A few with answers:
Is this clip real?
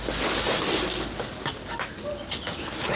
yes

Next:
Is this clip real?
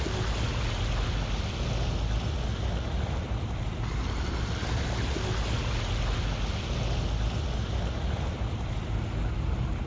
yes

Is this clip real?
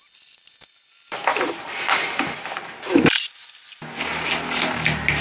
yes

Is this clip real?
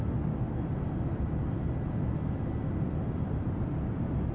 yes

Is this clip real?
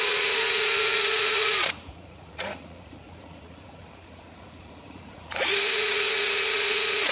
no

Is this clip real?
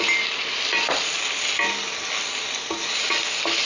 yes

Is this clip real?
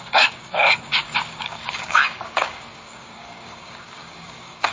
no